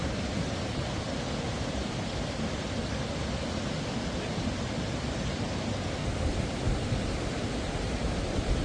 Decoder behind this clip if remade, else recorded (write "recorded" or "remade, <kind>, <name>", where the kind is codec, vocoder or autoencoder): recorded